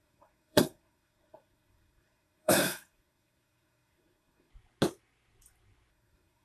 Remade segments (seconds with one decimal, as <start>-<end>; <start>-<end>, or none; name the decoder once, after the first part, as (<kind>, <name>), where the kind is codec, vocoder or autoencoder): 0.0-4.5 (codec, SNAC); 5.9-6.4